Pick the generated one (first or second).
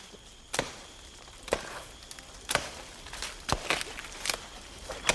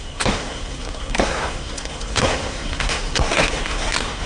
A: second